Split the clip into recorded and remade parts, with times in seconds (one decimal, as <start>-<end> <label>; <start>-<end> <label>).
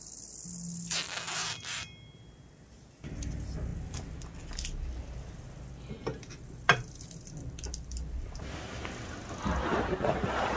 0.0-10.6 recorded